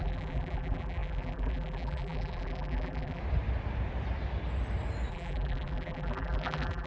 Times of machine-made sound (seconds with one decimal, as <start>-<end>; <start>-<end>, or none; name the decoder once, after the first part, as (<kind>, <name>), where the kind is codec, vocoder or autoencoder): 0.0-3.2 (vocoder, BigVGAN v2); 5.1-6.9